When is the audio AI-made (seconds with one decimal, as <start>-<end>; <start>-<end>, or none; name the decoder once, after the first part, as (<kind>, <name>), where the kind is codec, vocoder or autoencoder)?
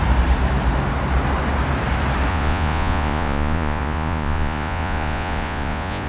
2.3-6.1 (vocoder, Vocos)